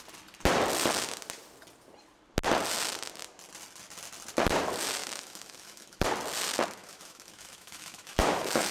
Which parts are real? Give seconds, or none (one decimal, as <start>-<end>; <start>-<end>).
0.0-5.0; 6.0-6.8